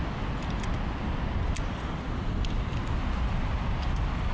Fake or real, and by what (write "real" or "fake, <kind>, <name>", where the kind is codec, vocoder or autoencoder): real